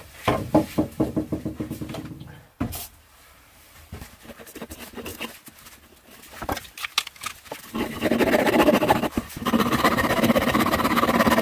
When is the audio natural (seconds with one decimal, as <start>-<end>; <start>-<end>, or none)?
5.1-8.3